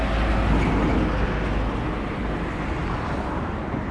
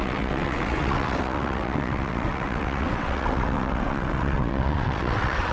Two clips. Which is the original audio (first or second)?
first